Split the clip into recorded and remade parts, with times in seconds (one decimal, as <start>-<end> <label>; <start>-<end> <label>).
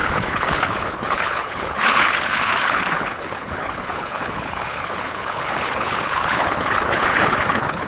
0.0-7.9 remade